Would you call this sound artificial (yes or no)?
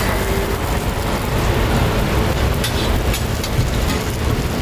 no